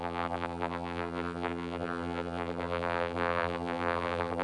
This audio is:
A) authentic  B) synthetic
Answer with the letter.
B